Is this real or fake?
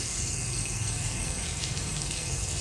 fake